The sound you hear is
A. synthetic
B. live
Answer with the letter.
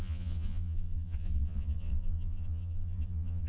A